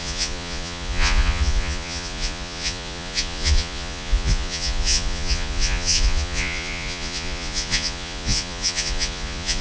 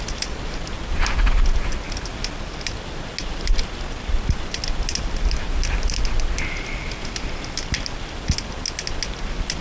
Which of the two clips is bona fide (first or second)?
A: second